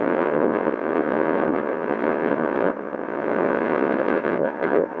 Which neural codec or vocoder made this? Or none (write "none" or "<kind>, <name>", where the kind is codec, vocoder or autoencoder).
vocoder, Vocos